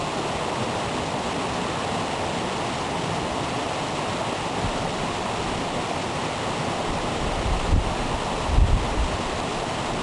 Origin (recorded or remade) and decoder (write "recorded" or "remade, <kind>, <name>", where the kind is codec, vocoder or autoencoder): recorded